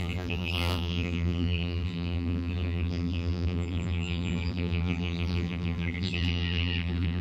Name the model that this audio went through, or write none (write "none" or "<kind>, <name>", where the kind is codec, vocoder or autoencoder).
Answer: vocoder, BigVGAN v2